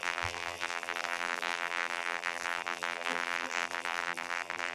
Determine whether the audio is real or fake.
fake